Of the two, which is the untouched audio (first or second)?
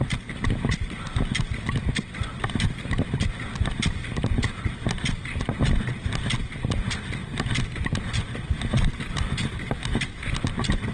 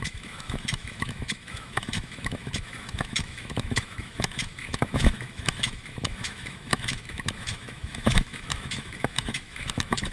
first